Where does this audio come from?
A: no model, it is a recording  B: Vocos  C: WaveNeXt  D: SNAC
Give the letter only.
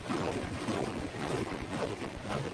C